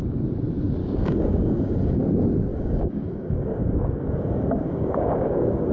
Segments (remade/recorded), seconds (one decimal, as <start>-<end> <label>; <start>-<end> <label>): 0.0-0.8 recorded; 0.8-2.0 remade; 2.0-2.5 recorded; 2.5-5.7 remade